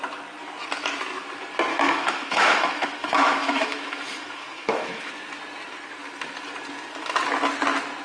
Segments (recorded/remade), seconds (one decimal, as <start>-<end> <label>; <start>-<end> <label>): 0.0-1.7 recorded; 1.7-5.1 remade; 5.1-8.0 recorded